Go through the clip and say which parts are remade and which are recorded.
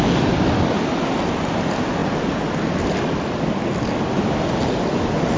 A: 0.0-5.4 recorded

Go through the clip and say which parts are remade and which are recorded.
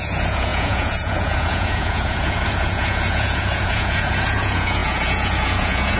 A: 0.0-6.0 remade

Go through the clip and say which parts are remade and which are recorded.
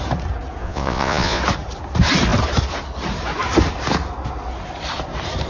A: 0.0-0.6 recorded; 0.6-1.4 remade; 1.4-5.5 recorded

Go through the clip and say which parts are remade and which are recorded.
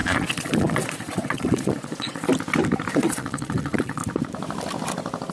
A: 0.0-2.3 remade; 2.3-2.9 recorded; 2.9-4.0 remade; 4.0-5.3 recorded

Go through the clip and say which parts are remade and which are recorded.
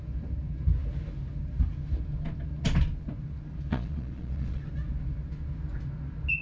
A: 0.0-3.7 recorded; 3.7-4.6 remade; 4.6-6.4 recorded